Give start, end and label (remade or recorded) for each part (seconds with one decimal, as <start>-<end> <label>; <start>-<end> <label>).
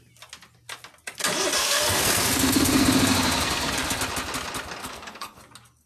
0.0-1.6 recorded; 1.6-4.0 remade; 4.0-4.8 recorded; 4.8-5.4 remade; 5.4-5.9 recorded